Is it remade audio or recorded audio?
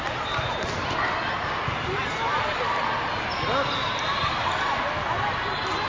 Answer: recorded